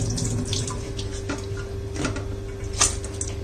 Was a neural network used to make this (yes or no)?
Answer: no